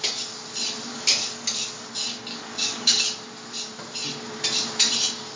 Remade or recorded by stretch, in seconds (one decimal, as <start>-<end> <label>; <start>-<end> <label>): 0.0-0.9 recorded; 0.9-1.9 remade; 1.9-2.3 recorded; 2.3-3.0 remade; 3.0-5.4 recorded